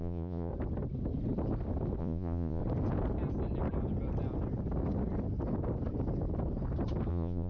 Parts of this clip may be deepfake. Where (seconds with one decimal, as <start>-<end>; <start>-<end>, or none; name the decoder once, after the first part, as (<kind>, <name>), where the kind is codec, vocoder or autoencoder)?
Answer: 0.0-0.5 (vocoder, Vocos); 2.0-2.6; 7.1-7.5